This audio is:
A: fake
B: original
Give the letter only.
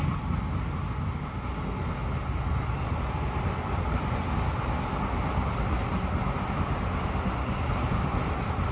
B